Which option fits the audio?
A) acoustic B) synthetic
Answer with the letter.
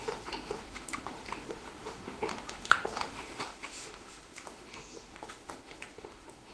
B